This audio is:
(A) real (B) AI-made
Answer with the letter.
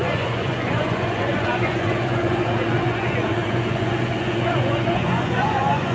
B